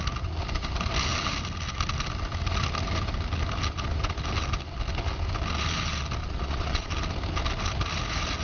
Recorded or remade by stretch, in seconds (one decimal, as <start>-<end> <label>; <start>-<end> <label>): 0.0-6.2 recorded; 6.2-6.9 remade; 6.9-8.4 recorded